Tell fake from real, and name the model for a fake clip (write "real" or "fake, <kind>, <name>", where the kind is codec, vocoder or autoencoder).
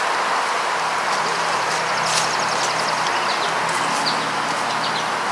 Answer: real